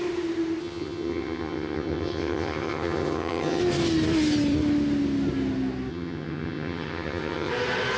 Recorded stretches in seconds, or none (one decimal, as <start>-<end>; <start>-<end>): 0.0-0.6; 3.6-5.9; 7.5-8.0